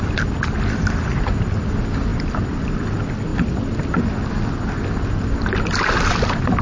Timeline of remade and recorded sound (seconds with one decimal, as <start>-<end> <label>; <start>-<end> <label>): 0.0-2.1 recorded; 2.1-2.8 remade; 2.8-6.6 recorded